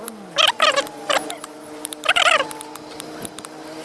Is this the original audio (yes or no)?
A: yes